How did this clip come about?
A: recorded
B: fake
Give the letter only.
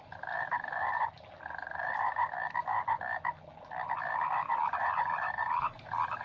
A